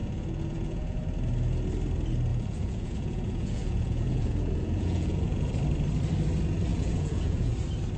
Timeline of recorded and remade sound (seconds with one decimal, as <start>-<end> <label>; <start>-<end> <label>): 0.0-1.0 remade; 1.0-2.3 recorded; 2.3-5.5 remade; 5.5-6.7 recorded; 6.7-7.5 remade; 7.5-8.0 recorded